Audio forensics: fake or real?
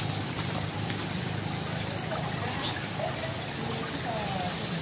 real